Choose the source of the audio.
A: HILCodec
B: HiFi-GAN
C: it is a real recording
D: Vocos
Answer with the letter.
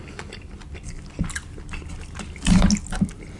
C